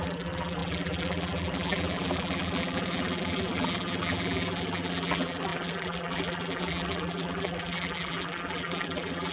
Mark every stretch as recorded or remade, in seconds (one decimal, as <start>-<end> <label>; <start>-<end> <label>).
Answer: 0.0-9.3 remade